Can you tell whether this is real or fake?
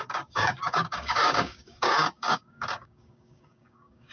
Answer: fake